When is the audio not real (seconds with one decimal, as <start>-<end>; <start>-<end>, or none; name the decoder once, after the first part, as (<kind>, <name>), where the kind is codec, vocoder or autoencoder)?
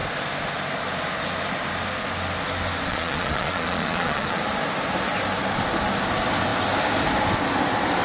2.9-4.4 (vocoder, Vocos)